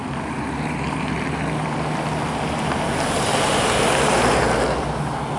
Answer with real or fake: real